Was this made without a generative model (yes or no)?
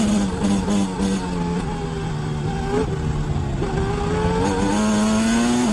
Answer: yes